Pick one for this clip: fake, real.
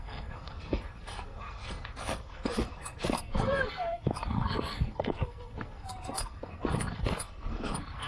fake